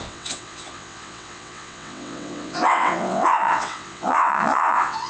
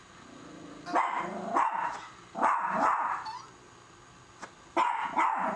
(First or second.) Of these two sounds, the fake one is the first